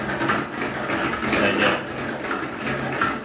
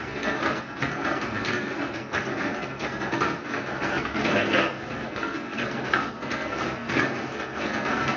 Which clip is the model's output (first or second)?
second